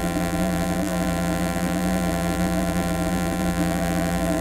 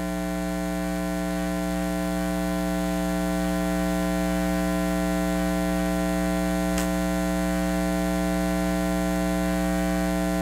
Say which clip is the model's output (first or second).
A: first